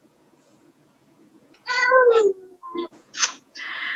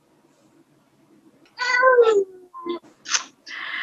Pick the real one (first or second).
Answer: second